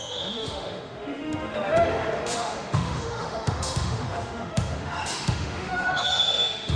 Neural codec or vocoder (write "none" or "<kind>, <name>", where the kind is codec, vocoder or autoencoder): autoencoder, DAC-VAE